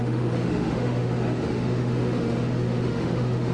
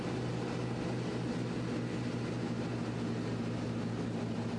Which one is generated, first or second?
first